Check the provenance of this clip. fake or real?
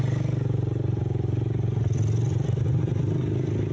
real